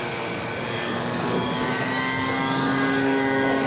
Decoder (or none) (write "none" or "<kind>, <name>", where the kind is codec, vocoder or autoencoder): codec, DAC